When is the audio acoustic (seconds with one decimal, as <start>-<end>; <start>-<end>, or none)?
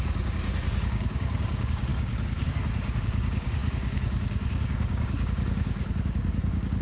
none